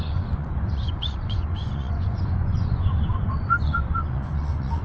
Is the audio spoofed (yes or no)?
yes